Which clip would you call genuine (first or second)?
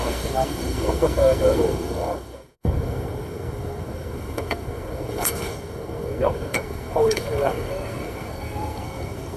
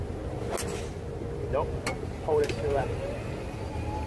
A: second